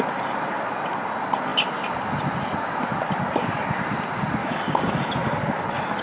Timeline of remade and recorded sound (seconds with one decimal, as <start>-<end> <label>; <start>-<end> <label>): 0.0-4.4 recorded; 4.4-4.9 remade; 4.9-6.0 recorded